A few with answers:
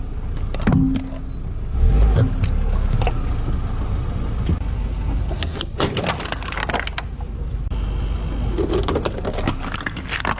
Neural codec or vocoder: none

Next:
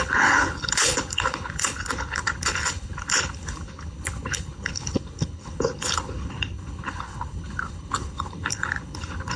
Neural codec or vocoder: codec, HILCodec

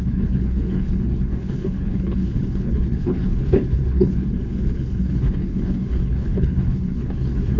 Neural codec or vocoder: codec, HILCodec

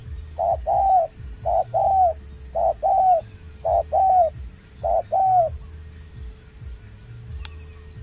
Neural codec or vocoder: none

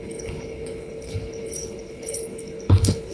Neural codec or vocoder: codec, HILCodec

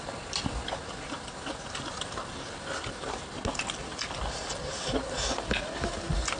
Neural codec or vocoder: none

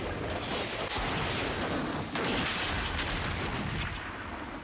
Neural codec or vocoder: none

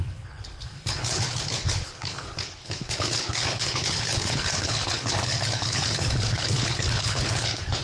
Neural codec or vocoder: codec, HILCodec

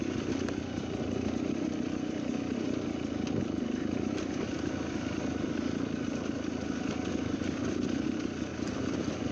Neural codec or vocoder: none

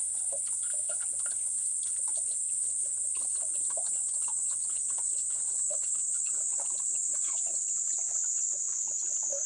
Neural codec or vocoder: codec, HILCodec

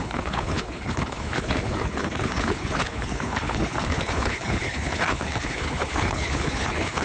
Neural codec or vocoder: codec, HILCodec